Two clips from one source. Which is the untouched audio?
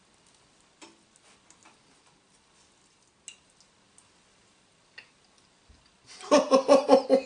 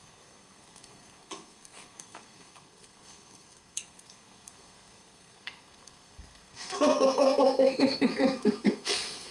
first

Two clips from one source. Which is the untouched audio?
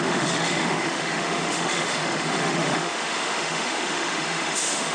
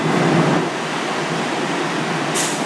second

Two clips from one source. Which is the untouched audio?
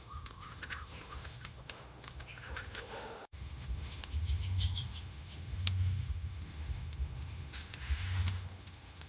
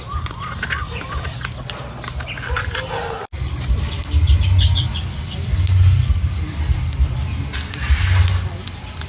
second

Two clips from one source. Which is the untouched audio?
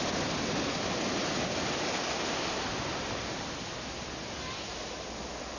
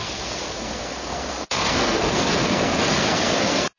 first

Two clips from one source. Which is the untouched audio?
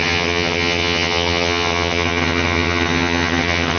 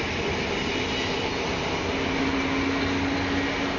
second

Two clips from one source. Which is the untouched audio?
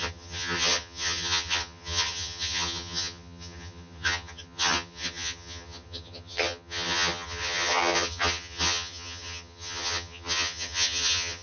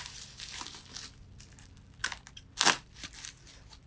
second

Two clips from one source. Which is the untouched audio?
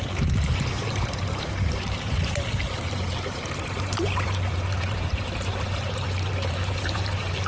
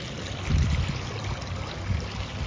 second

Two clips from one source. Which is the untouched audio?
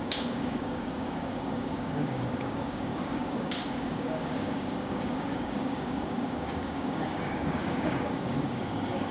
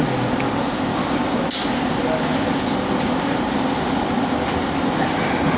second